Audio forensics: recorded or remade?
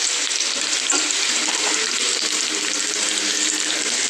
recorded